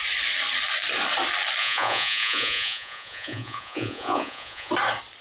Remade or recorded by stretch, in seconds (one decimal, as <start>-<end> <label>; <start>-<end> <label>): 0.0-1.6 recorded; 1.6-4.7 remade; 4.7-5.2 recorded